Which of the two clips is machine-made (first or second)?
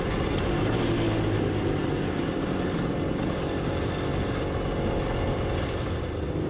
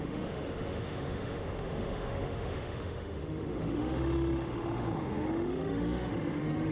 second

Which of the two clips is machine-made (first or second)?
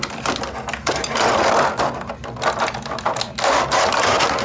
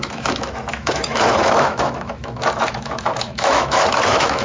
second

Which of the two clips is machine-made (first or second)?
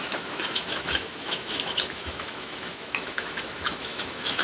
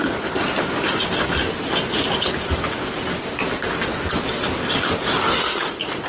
first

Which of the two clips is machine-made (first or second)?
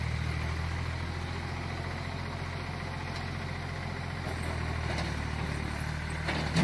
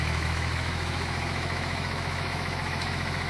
second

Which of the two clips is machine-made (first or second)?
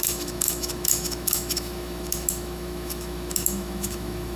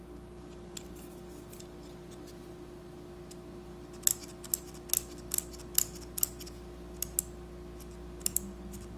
first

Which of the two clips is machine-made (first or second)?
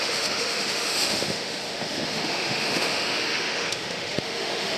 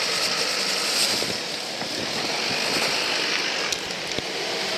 first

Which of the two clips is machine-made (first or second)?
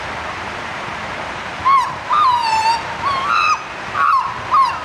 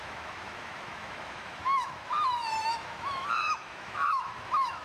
second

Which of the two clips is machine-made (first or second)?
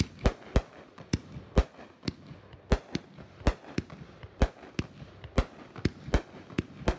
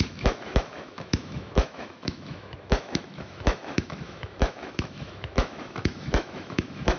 second